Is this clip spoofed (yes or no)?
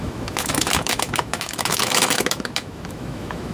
yes